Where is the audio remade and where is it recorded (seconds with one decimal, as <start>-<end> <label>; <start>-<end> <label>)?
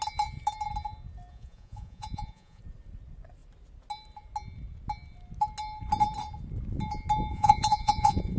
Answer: 0.0-1.3 recorded; 1.3-2.6 remade; 2.6-7.3 recorded; 7.3-8.4 remade